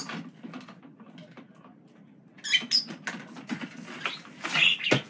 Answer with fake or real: real